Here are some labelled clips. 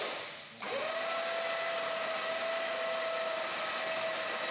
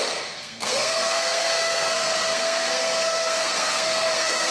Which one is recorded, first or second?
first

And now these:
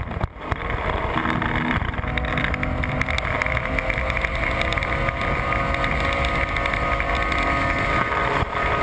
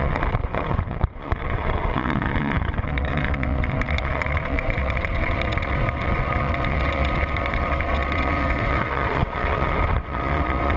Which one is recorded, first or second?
first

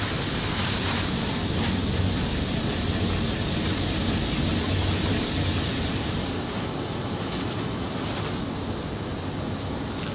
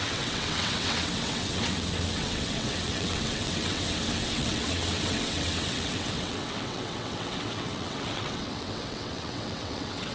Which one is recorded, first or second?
first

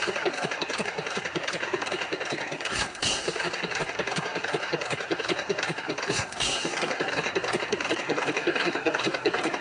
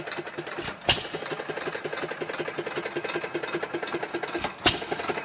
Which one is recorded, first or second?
second